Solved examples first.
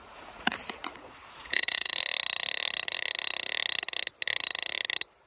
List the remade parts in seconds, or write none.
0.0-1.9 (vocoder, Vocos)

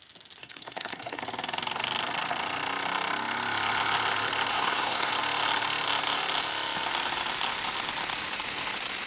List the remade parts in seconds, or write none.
0.4-1.2 (codec, SNAC); 4.5-5.1

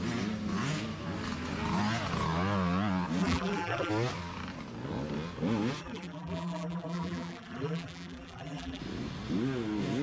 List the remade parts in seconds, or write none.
3.2-3.9 (vocoder, BigVGAN v2); 5.8-8.8

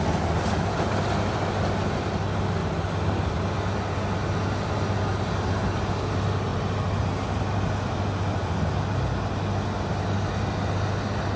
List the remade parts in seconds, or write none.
none

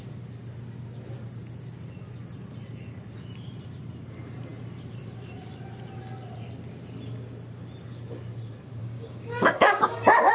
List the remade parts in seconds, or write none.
8.8-10.3 (codec, DAC)